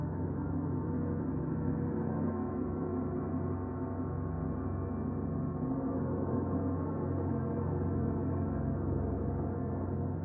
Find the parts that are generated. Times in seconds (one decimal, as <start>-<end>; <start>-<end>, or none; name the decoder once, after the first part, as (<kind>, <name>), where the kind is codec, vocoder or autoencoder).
0.0-3.2 (codec, SNAC); 5.7-10.2